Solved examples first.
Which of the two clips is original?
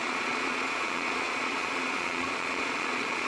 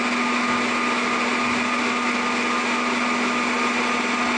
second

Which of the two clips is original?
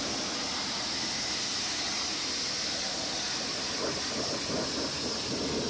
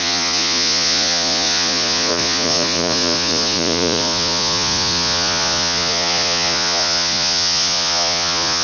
first